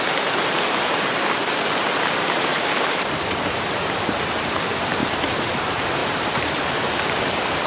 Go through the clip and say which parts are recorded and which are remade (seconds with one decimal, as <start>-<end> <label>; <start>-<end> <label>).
0.0-2.5 recorded; 2.5-4.2 remade; 4.2-5.0 recorded; 5.0-5.6 remade; 5.6-6.0 recorded; 6.0-6.6 remade; 6.6-7.7 recorded